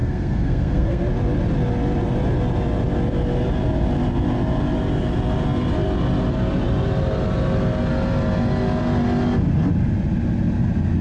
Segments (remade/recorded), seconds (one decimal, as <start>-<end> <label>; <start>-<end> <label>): 0.0-1.0 remade; 1.0-11.0 recorded